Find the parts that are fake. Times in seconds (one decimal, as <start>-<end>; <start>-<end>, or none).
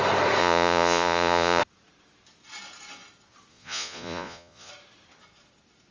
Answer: 0.4-1.6; 3.5-4.7